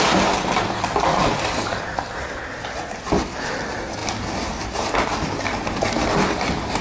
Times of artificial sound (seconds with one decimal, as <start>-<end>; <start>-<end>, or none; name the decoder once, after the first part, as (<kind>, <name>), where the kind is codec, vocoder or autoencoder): none